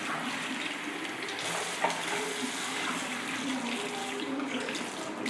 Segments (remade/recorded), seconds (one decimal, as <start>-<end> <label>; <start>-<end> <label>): 0.0-4.0 recorded; 4.0-4.6 remade; 4.6-5.3 recorded